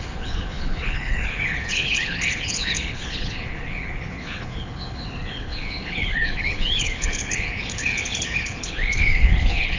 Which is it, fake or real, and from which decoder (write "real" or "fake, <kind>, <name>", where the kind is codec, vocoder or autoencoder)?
fake, codec, HILCodec